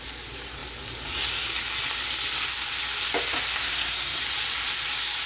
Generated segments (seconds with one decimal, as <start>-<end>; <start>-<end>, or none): 3.6-4.2